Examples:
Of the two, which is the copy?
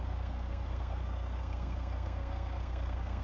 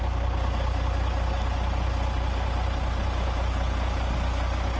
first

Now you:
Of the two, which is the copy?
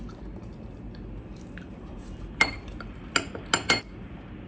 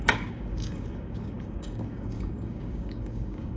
second